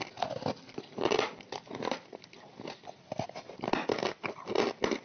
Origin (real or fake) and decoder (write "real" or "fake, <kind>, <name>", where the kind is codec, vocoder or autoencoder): real